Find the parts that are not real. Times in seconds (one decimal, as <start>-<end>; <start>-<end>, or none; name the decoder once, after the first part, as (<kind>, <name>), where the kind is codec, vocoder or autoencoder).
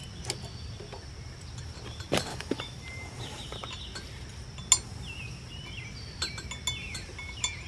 2.3-2.8 (autoencoder, DAC-VAE)